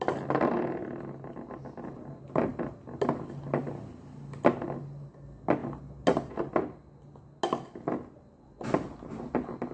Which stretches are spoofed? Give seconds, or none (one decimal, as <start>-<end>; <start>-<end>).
none